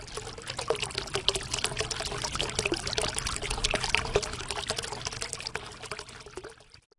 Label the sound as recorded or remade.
recorded